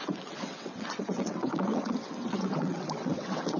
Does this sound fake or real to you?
fake